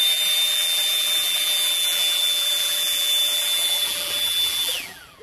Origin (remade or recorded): remade